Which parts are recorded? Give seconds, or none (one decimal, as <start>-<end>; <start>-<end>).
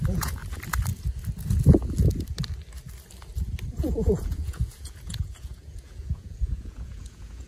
0.4-3.8